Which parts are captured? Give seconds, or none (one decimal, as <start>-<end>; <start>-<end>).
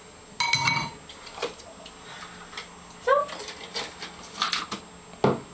0.0-5.5